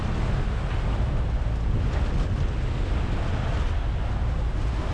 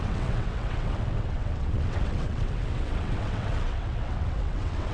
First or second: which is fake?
second